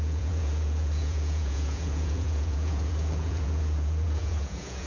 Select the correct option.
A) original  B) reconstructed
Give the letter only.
B